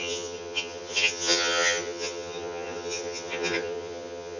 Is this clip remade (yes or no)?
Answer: yes